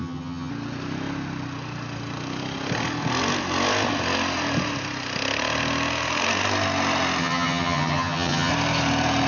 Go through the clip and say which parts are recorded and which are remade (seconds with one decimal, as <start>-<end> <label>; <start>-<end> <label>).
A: 0.0-0.5 remade; 0.5-7.2 recorded; 7.2-8.5 remade; 8.5-9.3 recorded